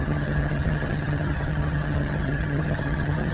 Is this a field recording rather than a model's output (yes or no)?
no